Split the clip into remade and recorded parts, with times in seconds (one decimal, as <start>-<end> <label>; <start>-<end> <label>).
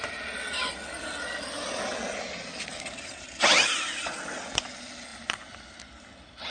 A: 0.0-6.5 recorded